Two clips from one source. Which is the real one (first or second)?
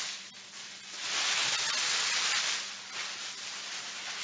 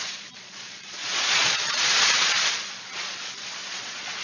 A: first